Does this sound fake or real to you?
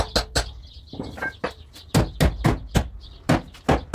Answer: real